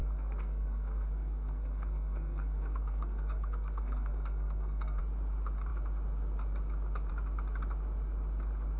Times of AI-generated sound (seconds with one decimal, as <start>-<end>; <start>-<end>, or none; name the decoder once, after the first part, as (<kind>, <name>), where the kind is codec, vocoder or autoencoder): 0.0-5.0 (codec, SNAC)